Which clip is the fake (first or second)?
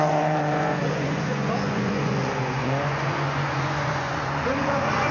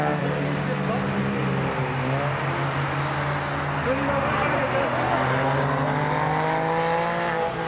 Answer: first